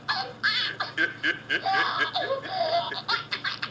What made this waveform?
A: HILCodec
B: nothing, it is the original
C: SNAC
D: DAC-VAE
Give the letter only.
B